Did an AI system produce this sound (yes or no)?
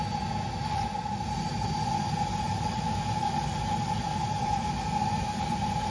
no